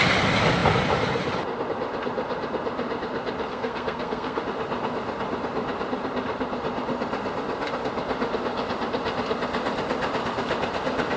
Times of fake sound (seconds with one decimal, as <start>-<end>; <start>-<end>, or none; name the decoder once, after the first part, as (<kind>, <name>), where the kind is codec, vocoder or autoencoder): 3.5-4.4 (codec, SNAC)